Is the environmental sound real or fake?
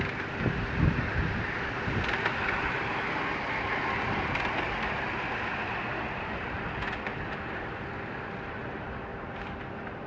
real